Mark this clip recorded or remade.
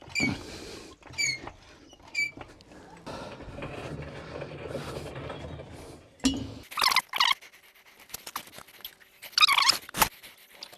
recorded